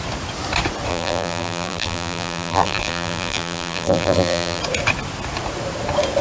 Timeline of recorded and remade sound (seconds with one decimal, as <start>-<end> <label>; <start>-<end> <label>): 0.0-0.9 recorded; 0.9-4.6 remade; 4.6-6.2 recorded